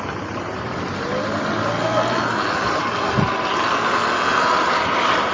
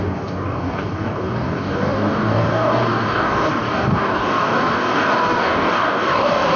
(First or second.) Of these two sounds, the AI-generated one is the second